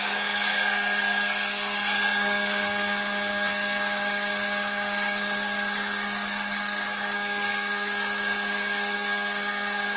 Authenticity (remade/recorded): remade